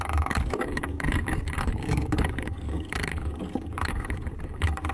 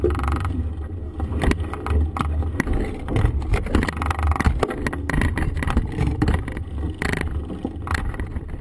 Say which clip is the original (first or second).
second